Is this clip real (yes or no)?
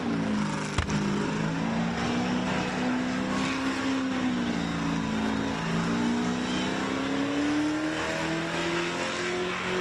yes